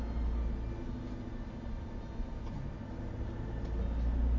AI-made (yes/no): no